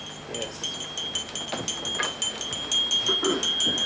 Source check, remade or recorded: recorded